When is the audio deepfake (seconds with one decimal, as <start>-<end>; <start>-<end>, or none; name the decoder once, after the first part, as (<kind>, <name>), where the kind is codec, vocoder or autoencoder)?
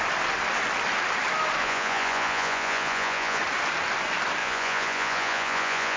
1.6-3.4 (vocoder, Vocos); 4.4-6.0